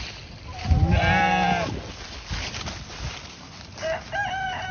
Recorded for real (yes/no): yes